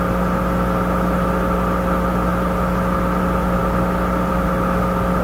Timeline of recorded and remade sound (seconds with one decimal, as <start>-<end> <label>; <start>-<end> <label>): 0.0-5.2 recorded